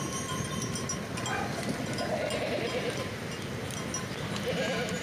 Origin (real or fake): real